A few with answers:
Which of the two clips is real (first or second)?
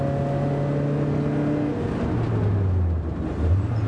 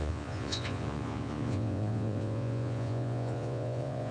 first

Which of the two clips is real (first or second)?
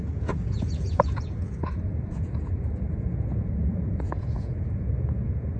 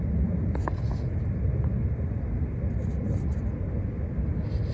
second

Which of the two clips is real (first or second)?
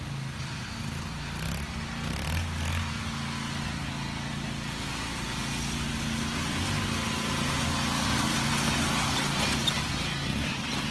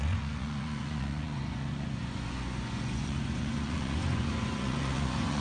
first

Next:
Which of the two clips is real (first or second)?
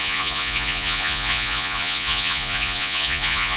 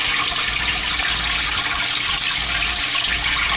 second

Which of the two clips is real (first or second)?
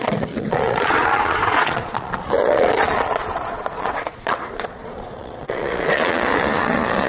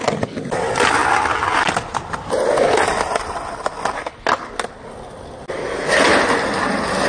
second